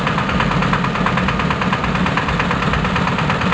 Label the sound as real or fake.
real